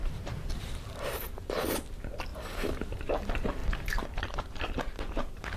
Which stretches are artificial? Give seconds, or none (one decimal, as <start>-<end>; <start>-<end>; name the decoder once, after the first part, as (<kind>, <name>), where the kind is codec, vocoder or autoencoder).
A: 0.0-1.7 (vocoder, BigVGAN v2); 3.6-5.6